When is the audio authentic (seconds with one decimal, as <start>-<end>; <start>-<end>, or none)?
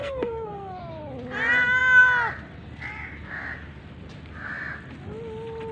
0.8-5.7